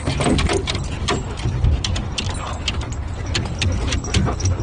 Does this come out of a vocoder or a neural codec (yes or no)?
no